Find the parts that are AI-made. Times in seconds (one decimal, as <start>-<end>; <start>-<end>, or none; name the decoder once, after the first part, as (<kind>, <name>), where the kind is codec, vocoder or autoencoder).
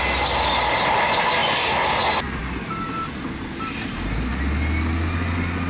none